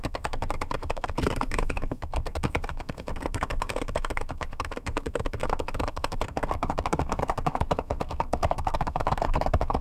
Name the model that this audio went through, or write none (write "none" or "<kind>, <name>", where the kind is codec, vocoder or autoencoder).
codec, SNAC